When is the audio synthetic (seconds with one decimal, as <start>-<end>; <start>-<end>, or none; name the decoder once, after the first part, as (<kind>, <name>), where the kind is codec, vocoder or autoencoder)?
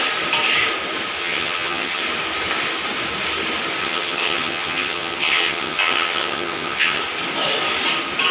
1.2-2.0 (vocoder, HiFi-GAN); 3.8-7.0